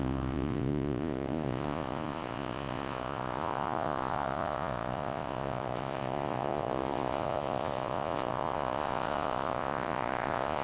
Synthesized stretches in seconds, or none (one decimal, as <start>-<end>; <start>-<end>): 0.0-10.6